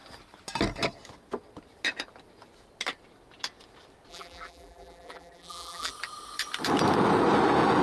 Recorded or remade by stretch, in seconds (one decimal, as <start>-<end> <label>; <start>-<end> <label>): 0.0-4.1 recorded; 4.1-5.9 remade; 5.9-7.8 recorded

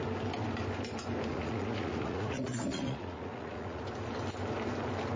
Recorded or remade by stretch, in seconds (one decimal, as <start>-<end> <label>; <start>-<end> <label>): 0.0-1.3 recorded; 1.3-3.8 remade; 3.8-5.2 recorded

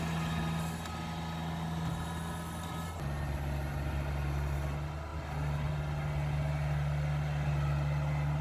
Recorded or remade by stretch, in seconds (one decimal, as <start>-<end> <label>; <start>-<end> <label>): 0.0-8.4 recorded

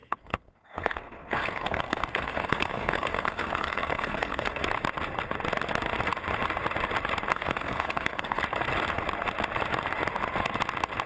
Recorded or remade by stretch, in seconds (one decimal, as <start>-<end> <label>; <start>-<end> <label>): 0.0-4.6 remade; 4.6-7.3 recorded; 7.3-8.4 remade; 8.4-11.1 recorded

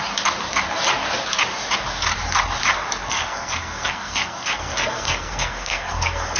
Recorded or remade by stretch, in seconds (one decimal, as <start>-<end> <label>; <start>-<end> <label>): 0.0-3.0 recorded; 3.0-6.4 remade

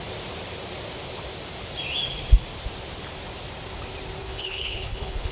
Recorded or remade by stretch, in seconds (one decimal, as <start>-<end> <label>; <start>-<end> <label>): 0.0-4.2 recorded; 4.2-5.3 remade

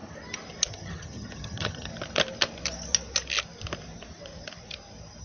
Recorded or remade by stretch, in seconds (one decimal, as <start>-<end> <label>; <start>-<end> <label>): 0.0-0.7 recorded; 0.7-1.9 remade; 1.9-5.2 recorded

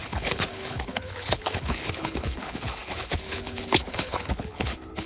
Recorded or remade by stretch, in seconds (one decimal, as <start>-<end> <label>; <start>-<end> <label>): 0.0-5.1 remade